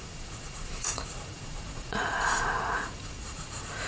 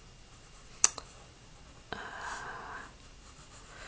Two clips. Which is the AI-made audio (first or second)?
first